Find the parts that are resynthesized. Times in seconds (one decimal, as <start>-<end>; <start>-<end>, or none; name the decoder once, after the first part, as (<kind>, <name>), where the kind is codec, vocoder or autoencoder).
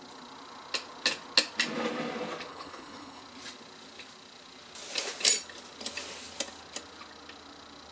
2.5-3.2 (codec, HILCodec)